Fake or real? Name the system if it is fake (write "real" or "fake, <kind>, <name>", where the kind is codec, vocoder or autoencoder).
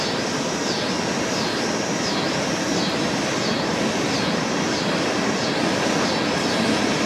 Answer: real